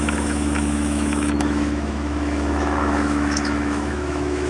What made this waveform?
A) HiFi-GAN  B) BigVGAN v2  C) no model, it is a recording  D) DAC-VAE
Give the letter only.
D